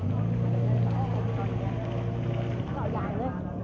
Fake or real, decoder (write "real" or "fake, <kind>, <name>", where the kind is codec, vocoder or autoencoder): real